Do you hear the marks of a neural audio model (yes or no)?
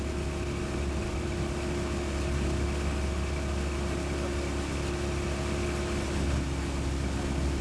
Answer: no